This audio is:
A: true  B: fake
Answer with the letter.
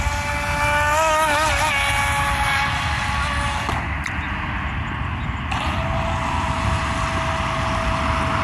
A